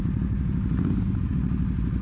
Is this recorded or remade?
recorded